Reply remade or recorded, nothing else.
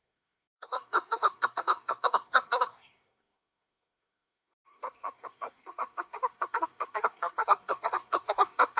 remade